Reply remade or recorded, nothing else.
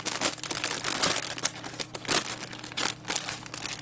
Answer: recorded